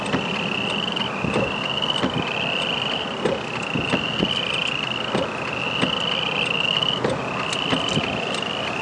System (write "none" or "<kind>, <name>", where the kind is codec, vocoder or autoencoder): none